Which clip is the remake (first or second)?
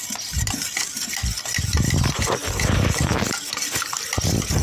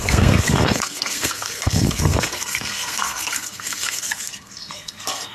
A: second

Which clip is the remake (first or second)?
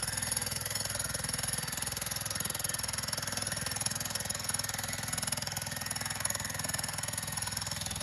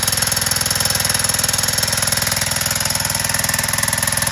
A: first